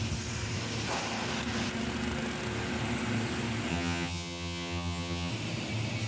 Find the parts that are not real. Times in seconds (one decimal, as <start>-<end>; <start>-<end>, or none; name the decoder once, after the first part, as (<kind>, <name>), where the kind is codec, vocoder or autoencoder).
3.7-5.3 (vocoder, HiFi-GAN)